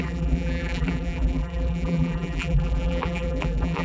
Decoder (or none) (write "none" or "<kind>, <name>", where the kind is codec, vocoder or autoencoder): vocoder, BigVGAN v2